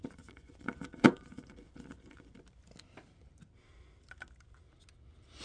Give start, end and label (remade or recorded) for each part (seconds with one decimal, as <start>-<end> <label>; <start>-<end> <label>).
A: 0.0-2.3 remade; 2.3-5.4 recorded